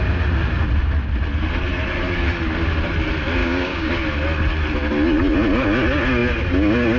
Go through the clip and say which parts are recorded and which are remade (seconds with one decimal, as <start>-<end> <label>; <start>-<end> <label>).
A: 0.0-3.4 recorded; 3.4-3.9 remade; 3.9-7.0 recorded